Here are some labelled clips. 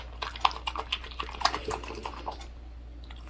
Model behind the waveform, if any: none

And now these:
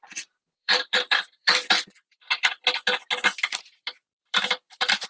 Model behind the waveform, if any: vocoder, BigVGAN v2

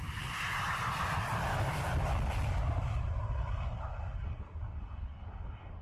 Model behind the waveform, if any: vocoder, BigVGAN v2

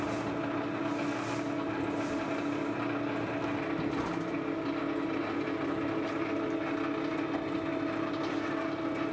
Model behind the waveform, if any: none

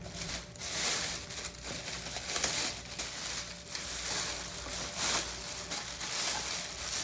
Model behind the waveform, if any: none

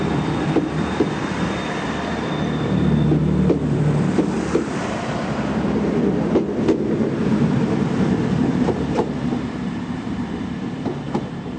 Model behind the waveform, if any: vocoder, BigVGAN v2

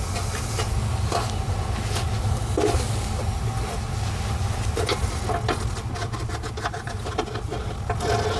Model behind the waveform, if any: none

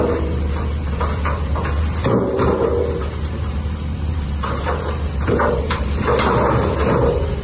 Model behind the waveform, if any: vocoder, BigVGAN v2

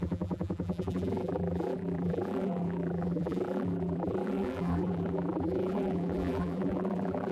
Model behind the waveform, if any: vocoder, BigVGAN v2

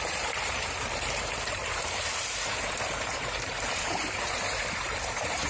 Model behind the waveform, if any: vocoder, BigVGAN v2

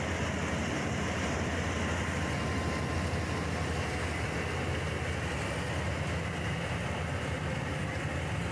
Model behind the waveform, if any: none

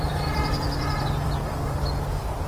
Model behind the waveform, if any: vocoder, BigVGAN v2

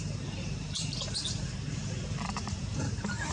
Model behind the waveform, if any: vocoder, BigVGAN v2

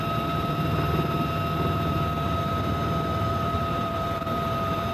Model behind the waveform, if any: vocoder, BigVGAN v2